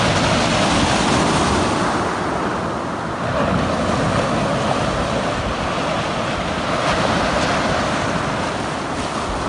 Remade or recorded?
recorded